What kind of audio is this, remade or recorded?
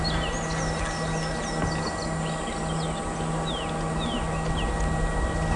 recorded